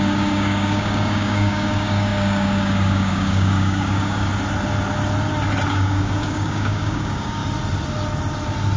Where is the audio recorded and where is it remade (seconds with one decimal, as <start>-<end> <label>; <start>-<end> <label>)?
0.0-4.3 remade; 4.3-5.7 recorded; 5.7-7.4 remade; 7.4-8.8 recorded